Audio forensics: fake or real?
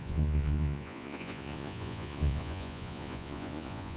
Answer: fake